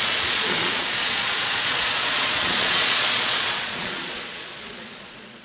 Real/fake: fake